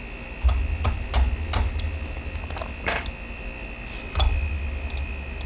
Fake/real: real